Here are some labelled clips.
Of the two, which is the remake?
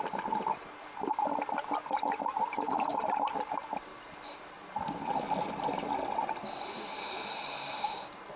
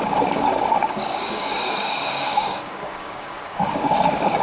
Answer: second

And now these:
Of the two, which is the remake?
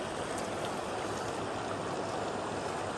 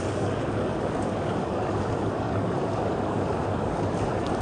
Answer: second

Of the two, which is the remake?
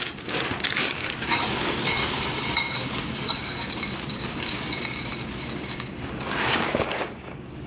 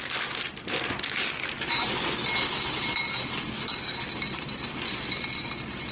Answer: first